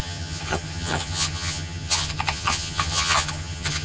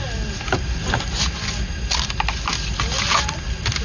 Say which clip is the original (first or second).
second